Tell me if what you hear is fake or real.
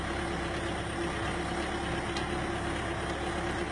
real